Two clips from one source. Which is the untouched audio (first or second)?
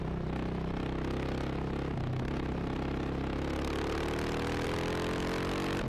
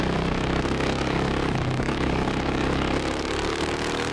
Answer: first